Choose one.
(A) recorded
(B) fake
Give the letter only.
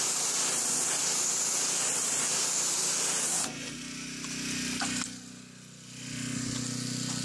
A